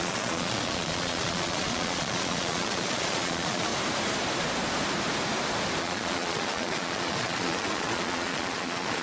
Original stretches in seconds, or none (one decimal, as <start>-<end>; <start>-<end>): 3.7-5.8